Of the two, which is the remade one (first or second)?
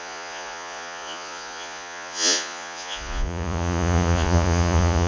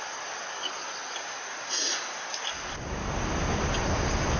first